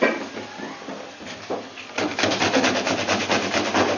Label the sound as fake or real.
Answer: real